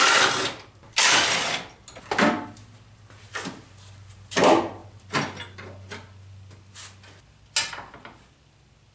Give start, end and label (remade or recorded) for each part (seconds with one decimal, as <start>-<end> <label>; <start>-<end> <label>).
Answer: 0.0-8.9 recorded